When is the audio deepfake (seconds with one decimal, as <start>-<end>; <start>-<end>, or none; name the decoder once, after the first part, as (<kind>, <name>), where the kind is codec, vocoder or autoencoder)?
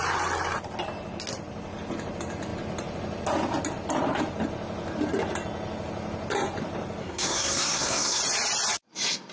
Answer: 7.0-8.2 (codec, SNAC)